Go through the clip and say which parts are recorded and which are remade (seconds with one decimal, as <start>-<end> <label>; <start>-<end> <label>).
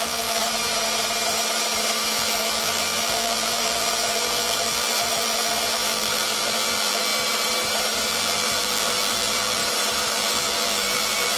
0.0-0.4 remade; 0.4-2.1 recorded; 2.1-7.1 remade; 7.1-8.1 recorded; 8.1-9.6 remade; 9.6-10.1 recorded; 10.1-11.4 remade